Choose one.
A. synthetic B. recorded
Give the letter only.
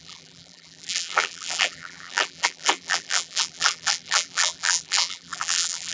A